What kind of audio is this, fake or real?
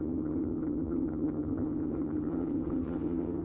fake